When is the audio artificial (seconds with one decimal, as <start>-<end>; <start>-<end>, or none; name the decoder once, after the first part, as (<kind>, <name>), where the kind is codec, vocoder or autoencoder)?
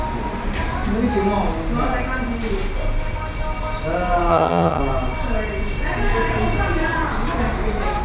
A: 4.3-4.8 (vocoder, HiFi-GAN)